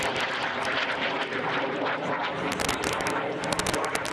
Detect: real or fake real